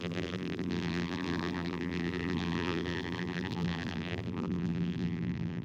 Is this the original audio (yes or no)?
no